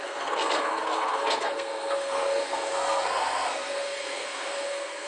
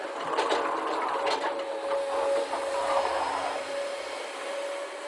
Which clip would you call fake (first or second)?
first